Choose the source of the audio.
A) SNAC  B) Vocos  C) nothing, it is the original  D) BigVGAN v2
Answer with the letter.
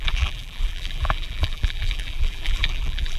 D